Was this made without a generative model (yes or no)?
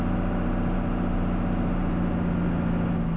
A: yes